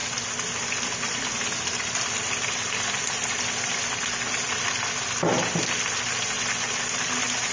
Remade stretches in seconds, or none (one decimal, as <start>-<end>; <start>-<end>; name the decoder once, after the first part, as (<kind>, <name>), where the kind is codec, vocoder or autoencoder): none